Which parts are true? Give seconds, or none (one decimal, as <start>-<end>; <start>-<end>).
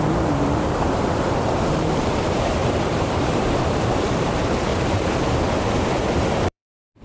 4.7-6.1